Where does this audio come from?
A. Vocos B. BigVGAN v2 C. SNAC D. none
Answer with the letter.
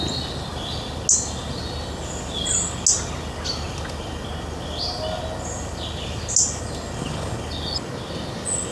D